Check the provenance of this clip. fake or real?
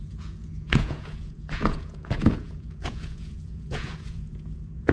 fake